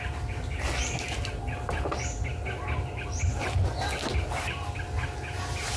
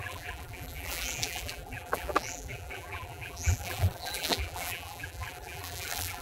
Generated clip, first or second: second